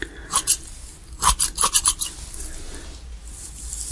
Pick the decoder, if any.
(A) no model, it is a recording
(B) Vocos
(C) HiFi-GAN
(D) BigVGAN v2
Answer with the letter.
A